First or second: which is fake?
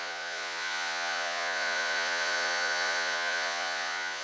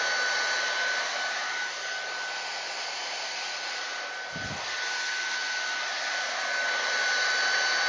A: first